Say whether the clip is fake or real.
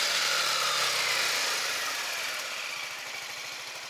real